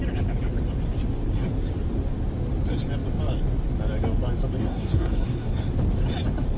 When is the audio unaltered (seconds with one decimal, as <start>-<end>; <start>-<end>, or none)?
0.0-4.6; 5.5-6.6